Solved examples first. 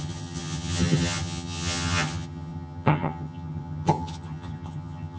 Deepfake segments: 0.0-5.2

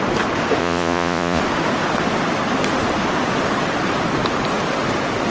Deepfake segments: 0.6-1.4